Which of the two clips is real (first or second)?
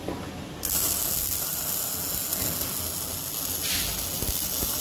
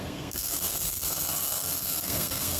first